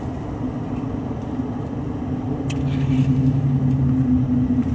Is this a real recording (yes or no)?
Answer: yes